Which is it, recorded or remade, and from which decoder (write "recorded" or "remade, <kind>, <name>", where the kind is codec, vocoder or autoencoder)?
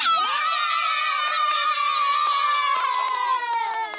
remade, vocoder, BigVGAN v2